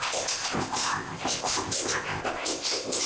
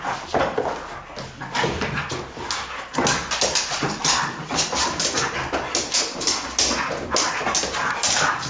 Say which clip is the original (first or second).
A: second